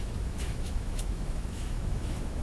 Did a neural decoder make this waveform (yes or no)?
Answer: yes